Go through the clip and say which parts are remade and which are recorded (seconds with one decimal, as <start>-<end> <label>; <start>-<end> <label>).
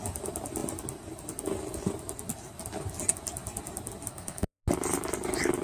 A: 0.0-4.1 recorded; 4.1-4.6 remade; 4.6-5.6 recorded